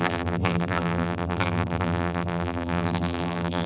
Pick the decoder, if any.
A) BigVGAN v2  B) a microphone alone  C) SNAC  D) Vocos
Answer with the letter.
A